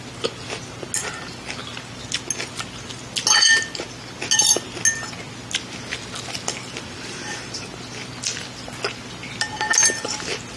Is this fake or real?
real